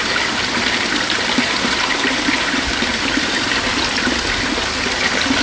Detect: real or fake real